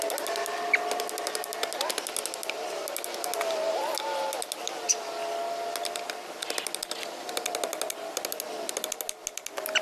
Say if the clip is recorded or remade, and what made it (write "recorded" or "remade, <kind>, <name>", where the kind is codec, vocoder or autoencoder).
recorded